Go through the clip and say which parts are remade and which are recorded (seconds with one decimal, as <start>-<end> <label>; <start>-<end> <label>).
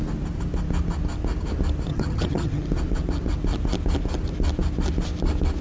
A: 0.0-1.9 recorded; 1.9-2.6 remade; 2.6-5.6 recorded